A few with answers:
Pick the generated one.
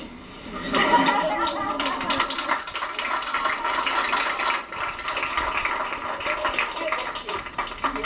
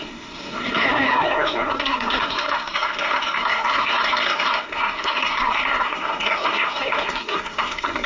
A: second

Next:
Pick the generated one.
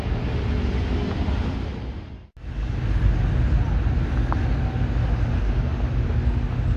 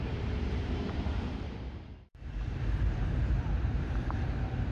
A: second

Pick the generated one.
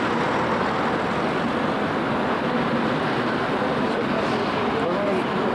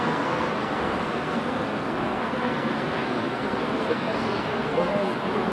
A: second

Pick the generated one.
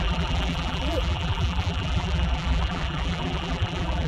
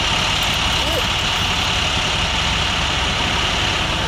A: first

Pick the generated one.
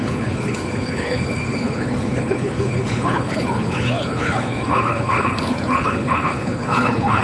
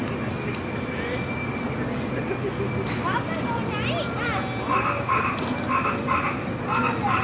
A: first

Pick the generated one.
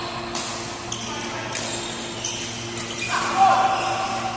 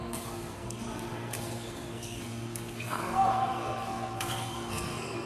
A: second